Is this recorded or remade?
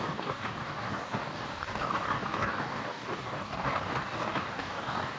remade